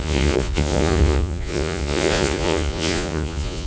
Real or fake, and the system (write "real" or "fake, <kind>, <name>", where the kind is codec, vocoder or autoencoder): fake, vocoder, Vocos